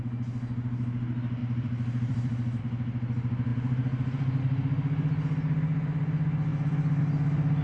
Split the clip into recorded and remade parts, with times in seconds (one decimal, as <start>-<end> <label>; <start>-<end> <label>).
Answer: 0.0-1.4 recorded; 1.4-2.6 remade; 2.6-3.5 recorded; 3.5-4.4 remade; 4.4-7.6 recorded